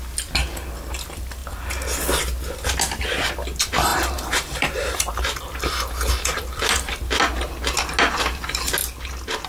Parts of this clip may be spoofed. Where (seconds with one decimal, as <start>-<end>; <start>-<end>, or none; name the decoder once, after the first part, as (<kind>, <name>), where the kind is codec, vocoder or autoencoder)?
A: 3.9-5.4 (vocoder, BigVGAN v2)